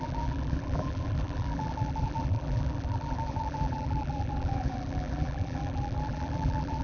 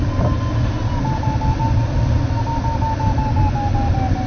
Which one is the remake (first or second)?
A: first